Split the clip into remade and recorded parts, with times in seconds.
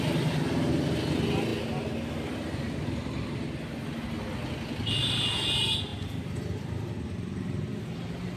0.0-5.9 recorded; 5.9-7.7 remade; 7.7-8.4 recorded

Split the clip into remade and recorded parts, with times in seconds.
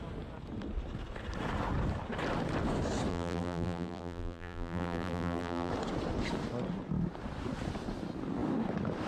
0.0-3.1 recorded; 3.1-5.7 remade; 5.7-9.1 recorded